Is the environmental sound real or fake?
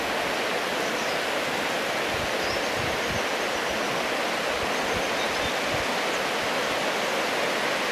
real